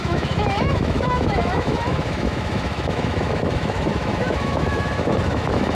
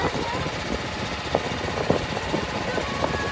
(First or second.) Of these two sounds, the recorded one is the second